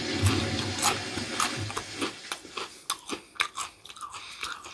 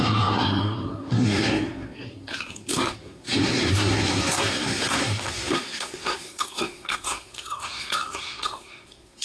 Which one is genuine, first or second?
first